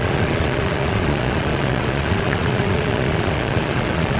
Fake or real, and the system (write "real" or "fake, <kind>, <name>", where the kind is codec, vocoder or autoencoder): fake, vocoder, Vocos